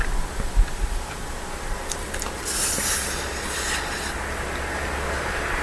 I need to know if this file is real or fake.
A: real